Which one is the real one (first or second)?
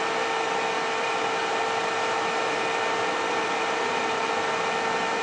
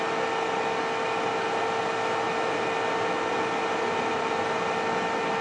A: second